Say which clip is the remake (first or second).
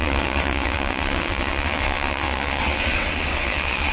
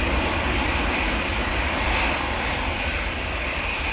first